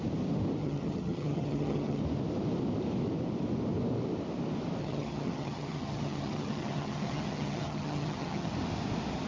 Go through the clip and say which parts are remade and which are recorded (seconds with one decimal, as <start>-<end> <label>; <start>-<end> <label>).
0.0-0.6 recorded; 0.6-2.0 remade; 2.0-4.8 recorded; 4.8-8.5 remade; 8.5-9.3 recorded